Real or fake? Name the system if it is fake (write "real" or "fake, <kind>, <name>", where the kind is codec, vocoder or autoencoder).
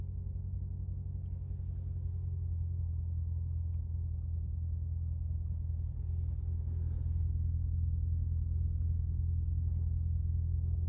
real